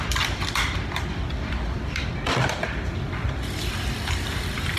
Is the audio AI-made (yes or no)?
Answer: yes